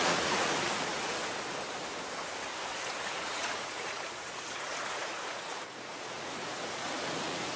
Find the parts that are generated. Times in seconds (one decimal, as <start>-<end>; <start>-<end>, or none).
0.0-1.2; 2.6-7.6